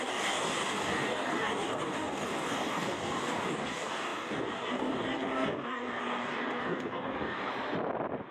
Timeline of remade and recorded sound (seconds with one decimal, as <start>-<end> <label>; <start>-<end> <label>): 0.0-7.5 remade; 7.5-8.3 recorded